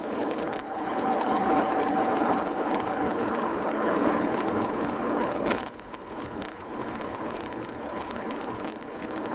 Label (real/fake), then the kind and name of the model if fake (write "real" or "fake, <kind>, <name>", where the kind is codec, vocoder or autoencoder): fake, codec, HILCodec